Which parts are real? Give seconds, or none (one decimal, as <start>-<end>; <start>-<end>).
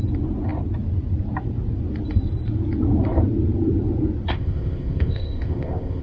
0.0-4.3